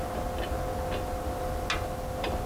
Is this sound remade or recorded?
recorded